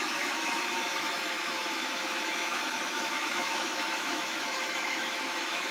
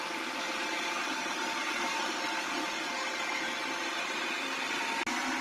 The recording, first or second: second